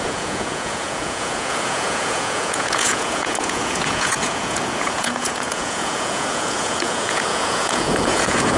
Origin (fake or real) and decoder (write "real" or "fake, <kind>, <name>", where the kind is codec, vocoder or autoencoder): fake, vocoder, Vocos